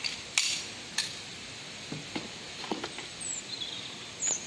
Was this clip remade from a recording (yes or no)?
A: no